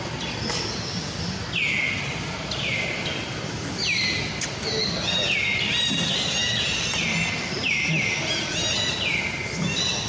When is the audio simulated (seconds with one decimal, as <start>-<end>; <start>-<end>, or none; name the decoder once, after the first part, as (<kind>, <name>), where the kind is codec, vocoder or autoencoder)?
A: none